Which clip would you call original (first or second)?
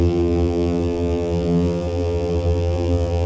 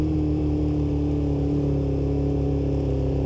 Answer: second